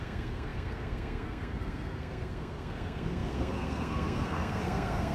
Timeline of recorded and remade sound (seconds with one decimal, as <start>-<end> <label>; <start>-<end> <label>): 0.0-5.1 remade